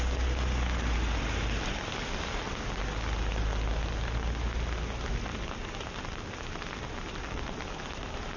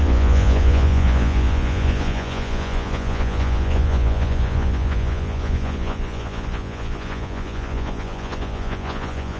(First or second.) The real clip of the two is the first